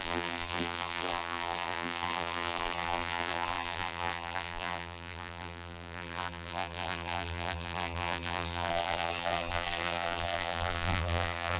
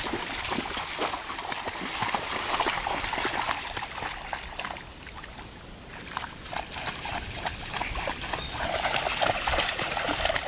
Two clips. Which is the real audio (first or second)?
second